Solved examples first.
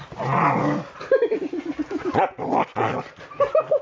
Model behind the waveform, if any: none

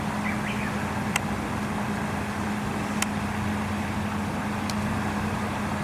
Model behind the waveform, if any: none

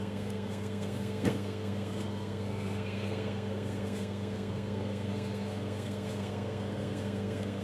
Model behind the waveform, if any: codec, SNAC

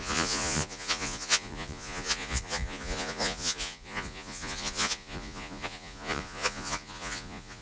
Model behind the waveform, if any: vocoder, Vocos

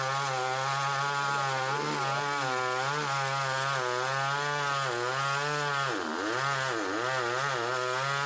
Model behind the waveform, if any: none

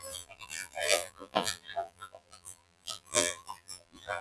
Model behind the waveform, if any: vocoder, BigVGAN v2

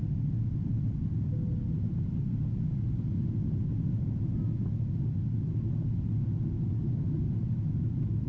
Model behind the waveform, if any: none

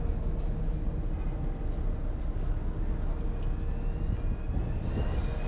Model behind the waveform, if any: none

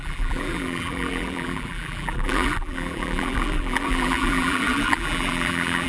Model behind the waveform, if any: vocoder, BigVGAN v2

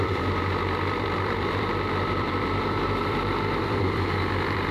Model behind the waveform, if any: vocoder, BigVGAN v2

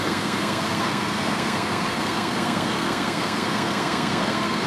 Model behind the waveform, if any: codec, SNAC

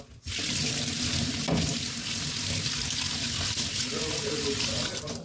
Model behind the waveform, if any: none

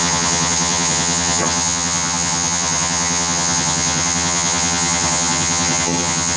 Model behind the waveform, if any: vocoder, HiFi-GAN